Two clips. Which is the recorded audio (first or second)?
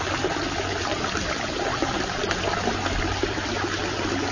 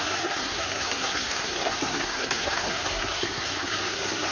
first